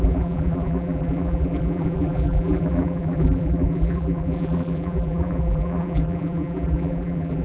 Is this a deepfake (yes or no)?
yes